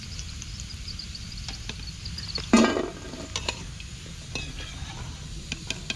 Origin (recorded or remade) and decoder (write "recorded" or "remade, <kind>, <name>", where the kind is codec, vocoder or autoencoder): recorded